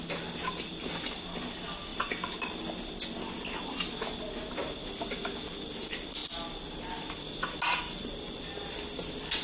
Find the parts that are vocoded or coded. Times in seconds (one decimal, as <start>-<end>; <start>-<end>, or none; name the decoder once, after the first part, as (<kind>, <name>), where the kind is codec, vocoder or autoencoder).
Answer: none